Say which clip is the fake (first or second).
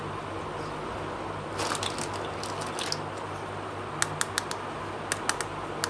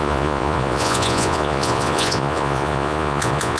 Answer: second